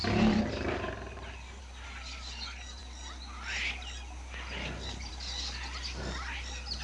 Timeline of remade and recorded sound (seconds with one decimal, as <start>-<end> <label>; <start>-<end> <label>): 0.0-6.8 recorded